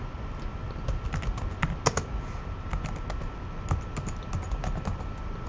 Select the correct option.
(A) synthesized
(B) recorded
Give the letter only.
B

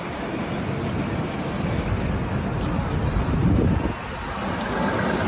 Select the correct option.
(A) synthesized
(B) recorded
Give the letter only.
B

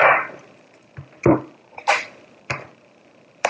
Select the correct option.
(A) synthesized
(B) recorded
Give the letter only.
A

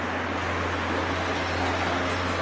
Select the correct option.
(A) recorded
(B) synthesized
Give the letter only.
A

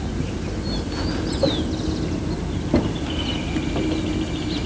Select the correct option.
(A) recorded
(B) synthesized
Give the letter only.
A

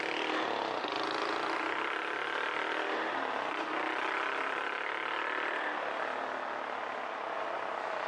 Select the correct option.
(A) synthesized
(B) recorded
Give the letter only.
B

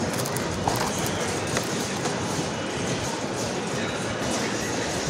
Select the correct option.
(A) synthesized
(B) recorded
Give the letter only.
A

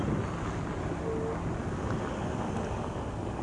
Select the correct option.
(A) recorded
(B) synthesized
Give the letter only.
A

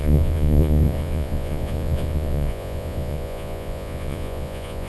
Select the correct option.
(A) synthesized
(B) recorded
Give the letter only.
A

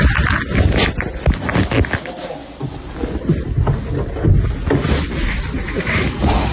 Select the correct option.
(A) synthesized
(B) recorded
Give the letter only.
B